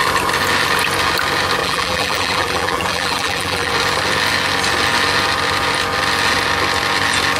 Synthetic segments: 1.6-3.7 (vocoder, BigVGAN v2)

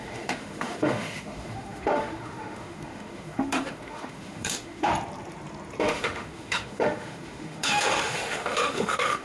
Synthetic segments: 0.0-4.9 (autoencoder, DAC-VAE); 5.8-9.2

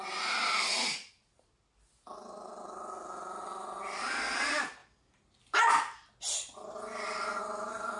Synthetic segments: none

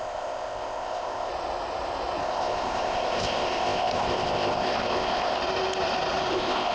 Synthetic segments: 0.0-1.3 (codec, ZipCodec); 2.2-5.4; 6.3-6.7

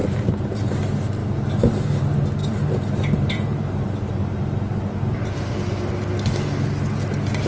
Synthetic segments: 0.0-0.7 (vocoder, BigVGAN v2); 1.2-2.0; 2.4-5.9

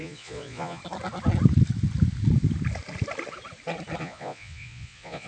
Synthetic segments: 0.0-0.8 (vocoder, Vocos); 4.0-5.3

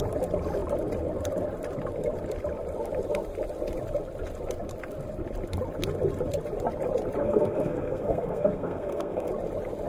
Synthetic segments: 7.2-9.3 (codec, SNAC)

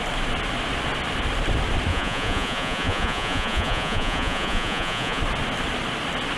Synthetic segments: 1.9-5.2 (vocoder, Vocos)